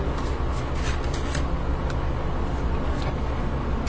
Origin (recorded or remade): recorded